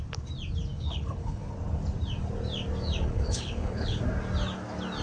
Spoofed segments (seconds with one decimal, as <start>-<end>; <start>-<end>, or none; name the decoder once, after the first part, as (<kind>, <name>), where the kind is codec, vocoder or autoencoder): 0.7-1.5 (codec, HILCodec); 3.0-4.0